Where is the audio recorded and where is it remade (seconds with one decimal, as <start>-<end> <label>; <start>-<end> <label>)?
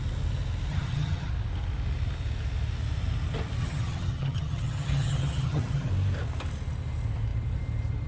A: 0.0-0.7 recorded; 0.7-1.3 remade; 1.3-3.6 recorded; 3.6-5.9 remade; 5.9-8.1 recorded